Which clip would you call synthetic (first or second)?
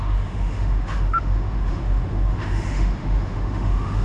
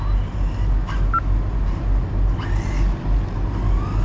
first